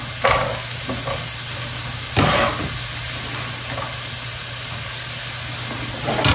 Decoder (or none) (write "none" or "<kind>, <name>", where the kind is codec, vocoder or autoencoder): none